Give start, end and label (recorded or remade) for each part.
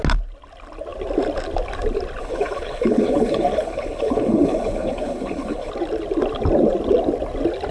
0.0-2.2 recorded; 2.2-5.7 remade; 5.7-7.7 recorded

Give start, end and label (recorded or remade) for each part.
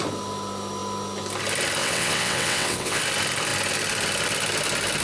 0.0-1.8 recorded; 1.8-3.0 remade; 3.0-5.0 recorded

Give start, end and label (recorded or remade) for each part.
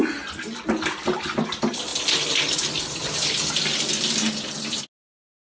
0.0-5.6 recorded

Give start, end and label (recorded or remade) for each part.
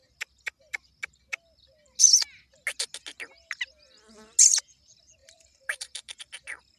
0.0-5.2 recorded; 5.2-6.2 remade; 6.2-6.8 recorded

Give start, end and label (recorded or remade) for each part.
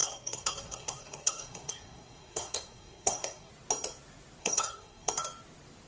0.0-3.5 remade; 3.5-4.4 recorded; 4.4-5.1 remade; 5.1-5.9 recorded